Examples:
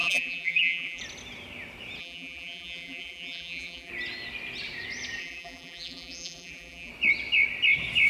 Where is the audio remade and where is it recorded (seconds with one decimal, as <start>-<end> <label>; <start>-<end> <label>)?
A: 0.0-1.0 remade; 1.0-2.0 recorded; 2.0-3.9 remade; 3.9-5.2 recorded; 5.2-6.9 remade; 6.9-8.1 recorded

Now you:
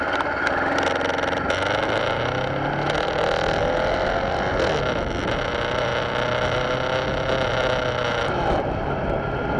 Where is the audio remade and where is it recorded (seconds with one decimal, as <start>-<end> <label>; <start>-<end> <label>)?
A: 0.0-9.6 recorded

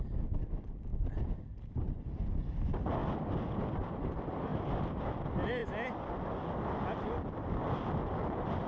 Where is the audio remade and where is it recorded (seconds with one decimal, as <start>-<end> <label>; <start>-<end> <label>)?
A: 0.0-3.0 remade; 3.0-3.9 recorded; 3.9-5.6 remade; 5.6-7.3 recorded; 7.3-8.7 remade